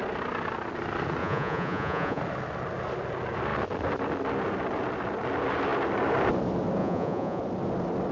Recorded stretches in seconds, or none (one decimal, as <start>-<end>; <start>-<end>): 0.0-1.2; 2.2-6.8; 7.4-8.1

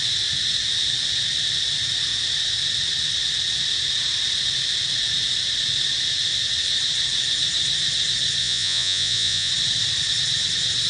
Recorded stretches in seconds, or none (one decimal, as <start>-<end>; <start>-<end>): 0.0-8.4; 9.5-10.9

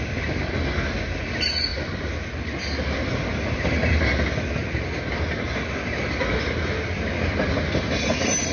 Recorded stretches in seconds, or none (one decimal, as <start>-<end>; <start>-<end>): 0.0-8.5

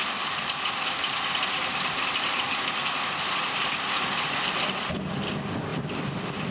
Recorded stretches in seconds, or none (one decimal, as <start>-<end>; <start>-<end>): 0.0-6.5

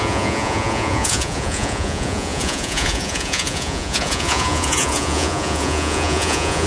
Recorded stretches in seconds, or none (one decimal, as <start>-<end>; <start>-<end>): none

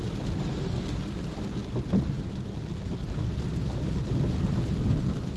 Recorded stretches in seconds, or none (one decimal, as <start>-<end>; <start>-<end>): 0.0-5.4

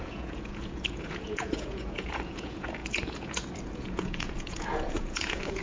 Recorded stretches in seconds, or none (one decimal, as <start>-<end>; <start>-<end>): none

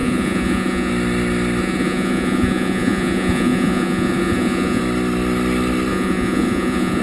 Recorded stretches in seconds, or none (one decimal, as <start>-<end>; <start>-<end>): 0.9-1.6; 4.8-5.9